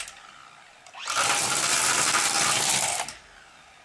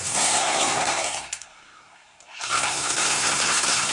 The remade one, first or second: second